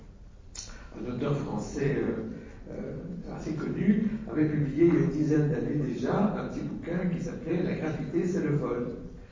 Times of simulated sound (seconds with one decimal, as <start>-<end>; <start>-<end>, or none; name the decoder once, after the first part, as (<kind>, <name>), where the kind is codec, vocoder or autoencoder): 0.0-4.2 (vocoder, BigVGAN v2); 5.1-9.3

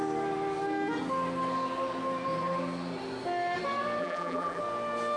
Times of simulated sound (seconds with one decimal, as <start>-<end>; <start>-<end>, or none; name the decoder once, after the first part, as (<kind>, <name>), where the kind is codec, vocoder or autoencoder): 4.0-4.6 (vocoder, BigVGAN v2)

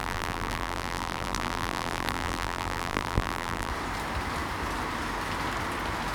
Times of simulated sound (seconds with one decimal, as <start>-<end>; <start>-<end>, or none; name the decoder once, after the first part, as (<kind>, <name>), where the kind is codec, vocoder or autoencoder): 0.0-3.7 (vocoder, BigVGAN v2)

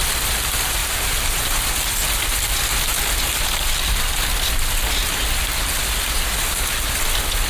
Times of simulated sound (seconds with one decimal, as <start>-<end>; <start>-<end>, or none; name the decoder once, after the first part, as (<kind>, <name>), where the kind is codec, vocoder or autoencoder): 0.8-1.5 (vocoder, BigVGAN v2)

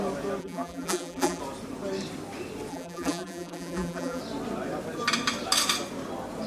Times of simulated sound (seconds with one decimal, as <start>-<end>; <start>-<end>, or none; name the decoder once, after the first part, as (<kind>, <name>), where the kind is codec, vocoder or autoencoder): 0.4-1.4 (vocoder, BigVGAN v2); 2.7-4.2

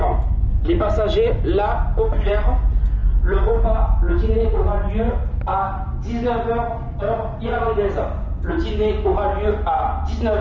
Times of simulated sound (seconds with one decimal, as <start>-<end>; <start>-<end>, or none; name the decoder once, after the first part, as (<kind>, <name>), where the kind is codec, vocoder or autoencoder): none